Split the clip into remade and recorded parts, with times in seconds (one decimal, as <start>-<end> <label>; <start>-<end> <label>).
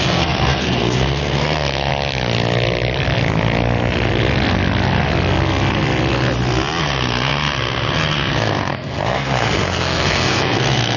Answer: 0.0-1.9 remade; 1.9-6.8 recorded; 6.8-11.0 remade